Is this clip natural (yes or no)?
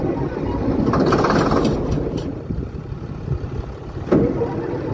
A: yes